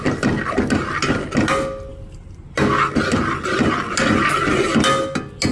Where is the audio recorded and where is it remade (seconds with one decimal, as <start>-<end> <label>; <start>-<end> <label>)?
0.0-5.5 recorded